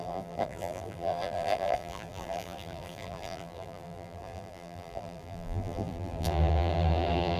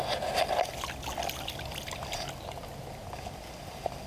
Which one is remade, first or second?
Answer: first